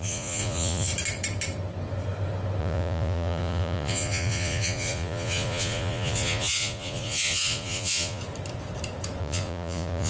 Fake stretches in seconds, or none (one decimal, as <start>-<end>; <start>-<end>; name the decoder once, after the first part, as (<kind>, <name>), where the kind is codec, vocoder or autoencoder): 0.0-0.9 (vocoder, Vocos); 2.6-8.2; 9.2-10.1